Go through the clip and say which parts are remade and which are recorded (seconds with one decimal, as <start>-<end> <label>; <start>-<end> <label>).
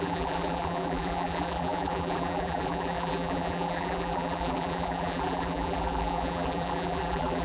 0.0-7.4 remade